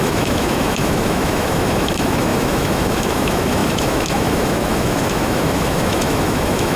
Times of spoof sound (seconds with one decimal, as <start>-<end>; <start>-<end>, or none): 0.0-6.8